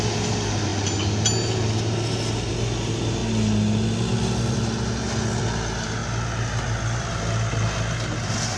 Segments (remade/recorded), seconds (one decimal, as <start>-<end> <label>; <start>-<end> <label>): 0.0-8.6 recorded